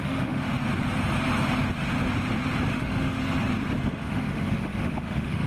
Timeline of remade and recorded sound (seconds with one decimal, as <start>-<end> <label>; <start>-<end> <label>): 0.0-0.5 remade; 0.5-2.7 recorded; 2.7-3.2 remade; 3.2-3.8 recorded; 3.8-5.5 remade